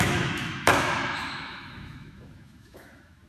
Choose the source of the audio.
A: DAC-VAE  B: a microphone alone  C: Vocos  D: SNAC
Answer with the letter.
A